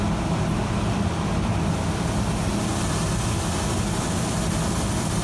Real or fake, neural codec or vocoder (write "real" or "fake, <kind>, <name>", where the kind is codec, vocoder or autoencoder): real